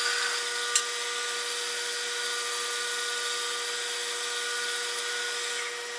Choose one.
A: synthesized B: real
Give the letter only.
B